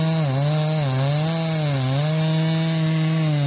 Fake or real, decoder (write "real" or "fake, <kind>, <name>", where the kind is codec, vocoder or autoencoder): real